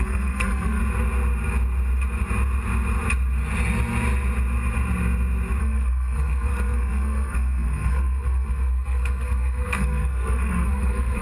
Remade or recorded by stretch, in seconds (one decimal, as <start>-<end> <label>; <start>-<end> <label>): 0.0-0.8 remade; 0.8-5.6 recorded; 5.6-11.2 remade